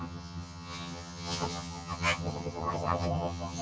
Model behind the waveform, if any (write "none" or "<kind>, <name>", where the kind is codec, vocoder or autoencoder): vocoder, HiFi-GAN